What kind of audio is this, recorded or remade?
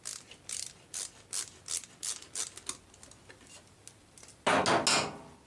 recorded